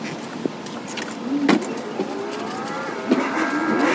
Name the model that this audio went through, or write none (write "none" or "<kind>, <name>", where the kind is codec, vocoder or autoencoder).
none